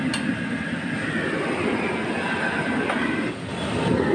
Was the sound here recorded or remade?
recorded